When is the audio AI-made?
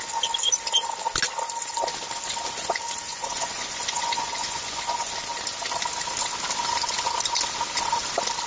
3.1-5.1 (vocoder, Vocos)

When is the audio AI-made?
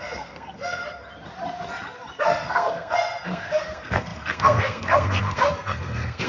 0.0-0.8 (codec, SNAC); 2.2-6.3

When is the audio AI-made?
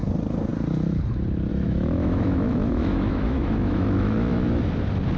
1.5-4.6 (autoencoder, DAC-VAE)